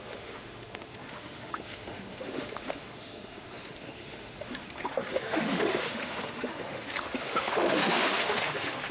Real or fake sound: fake